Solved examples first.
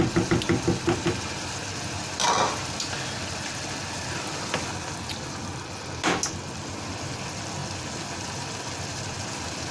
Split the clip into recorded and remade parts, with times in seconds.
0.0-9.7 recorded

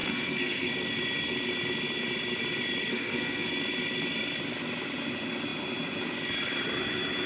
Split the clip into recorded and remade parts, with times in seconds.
0.0-0.7 remade; 0.7-2.9 recorded; 2.9-3.5 remade; 3.5-7.3 recorded